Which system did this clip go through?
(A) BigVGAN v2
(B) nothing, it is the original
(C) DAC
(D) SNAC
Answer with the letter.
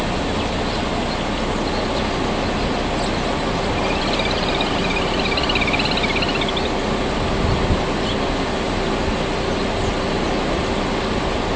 B